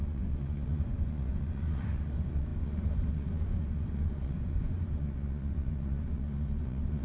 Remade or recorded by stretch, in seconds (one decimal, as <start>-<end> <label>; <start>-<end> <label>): 0.0-7.0 remade

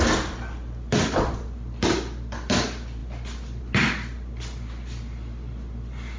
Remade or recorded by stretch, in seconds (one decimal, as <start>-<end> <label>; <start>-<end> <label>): 0.0-6.2 recorded

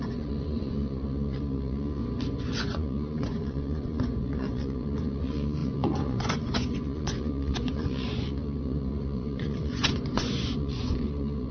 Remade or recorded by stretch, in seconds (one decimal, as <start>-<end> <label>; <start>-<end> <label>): 0.0-2.0 remade; 2.0-2.6 recorded; 2.6-11.5 remade